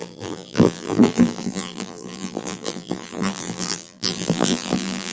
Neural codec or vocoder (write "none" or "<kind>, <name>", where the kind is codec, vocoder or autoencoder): vocoder, BigVGAN v2